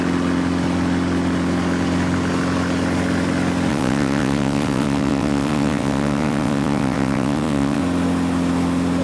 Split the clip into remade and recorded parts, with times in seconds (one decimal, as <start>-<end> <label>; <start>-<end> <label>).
0.0-3.7 recorded; 3.7-7.8 remade; 7.8-9.0 recorded